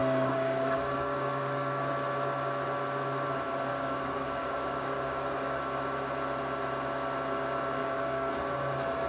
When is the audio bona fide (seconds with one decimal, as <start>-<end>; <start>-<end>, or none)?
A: 1.9-3.7; 5.6-7.8; 8.3-9.1